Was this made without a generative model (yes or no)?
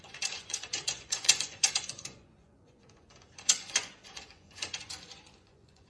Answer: no